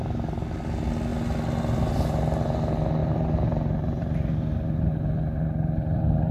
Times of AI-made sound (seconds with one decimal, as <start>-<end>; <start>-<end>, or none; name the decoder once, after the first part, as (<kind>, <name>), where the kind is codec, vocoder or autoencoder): 3.0-6.3 (vocoder, BigVGAN v2)